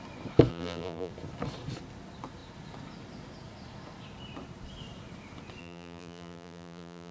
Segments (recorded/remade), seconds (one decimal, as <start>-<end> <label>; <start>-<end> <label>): 0.0-0.5 recorded; 0.5-1.1 remade; 1.1-5.6 recorded; 5.6-7.1 remade